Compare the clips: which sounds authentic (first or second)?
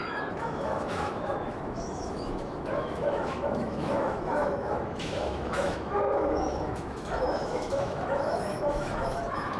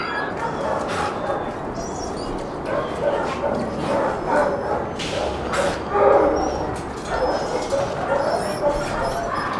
second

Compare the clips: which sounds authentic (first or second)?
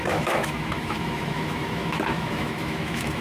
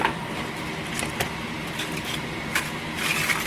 second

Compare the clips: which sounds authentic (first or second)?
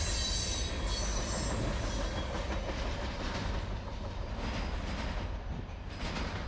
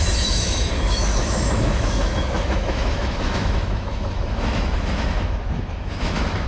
first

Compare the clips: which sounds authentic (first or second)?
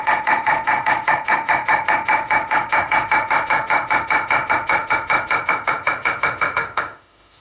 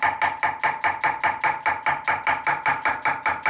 second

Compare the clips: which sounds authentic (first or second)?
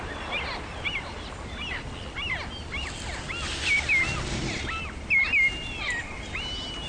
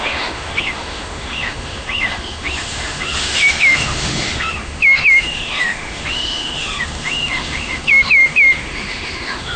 first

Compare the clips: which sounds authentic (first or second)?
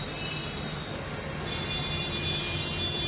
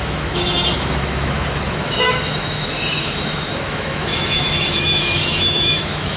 first